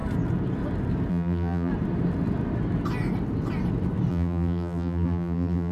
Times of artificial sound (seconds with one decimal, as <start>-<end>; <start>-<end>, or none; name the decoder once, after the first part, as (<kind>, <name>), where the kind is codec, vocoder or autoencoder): 1.1-1.7 (vocoder, BigVGAN v2); 4.1-5.7